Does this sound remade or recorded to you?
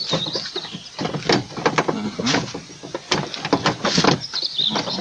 recorded